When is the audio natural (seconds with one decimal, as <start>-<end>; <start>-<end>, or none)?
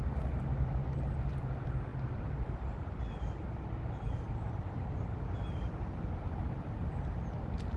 0.0-7.8